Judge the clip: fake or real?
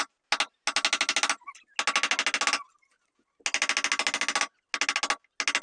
real